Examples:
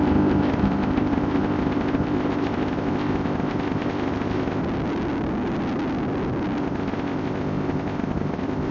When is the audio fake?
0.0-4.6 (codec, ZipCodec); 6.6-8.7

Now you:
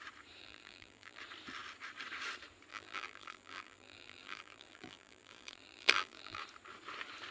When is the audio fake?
0.4-1.2 (vocoder, BigVGAN v2); 2.7-6.4

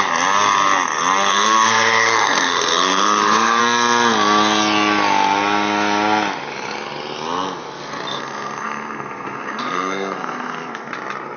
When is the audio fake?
1.3-3.6 (codec, SNAC); 8.1-10.9

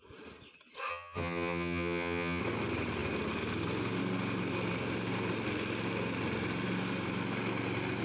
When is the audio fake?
0.9-2.4 (vocoder, HiFi-GAN)

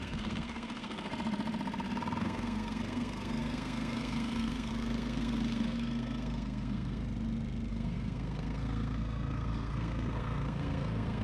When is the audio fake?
0.0-1.1 (codec, SNAC); 2.2-7.0; 7.7-11.2

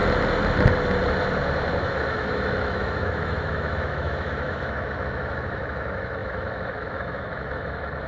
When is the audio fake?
1.8-8.1 (autoencoder, DAC-VAE)

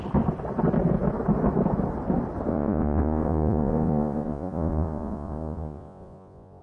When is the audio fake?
2.5-6.6 (vocoder, Vocos)